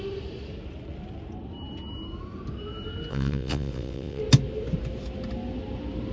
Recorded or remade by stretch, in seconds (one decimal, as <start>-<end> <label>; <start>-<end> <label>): 0.0-3.1 recorded; 3.1-4.2 remade; 4.2-6.1 recorded